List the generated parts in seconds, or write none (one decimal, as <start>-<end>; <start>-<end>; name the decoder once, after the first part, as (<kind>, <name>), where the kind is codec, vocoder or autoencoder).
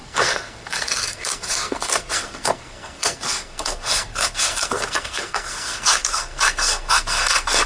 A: 0.0-7.7 (codec, SNAC)